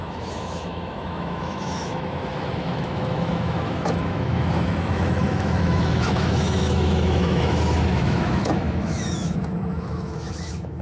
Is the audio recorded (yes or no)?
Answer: no